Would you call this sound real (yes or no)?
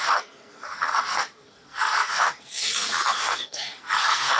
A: no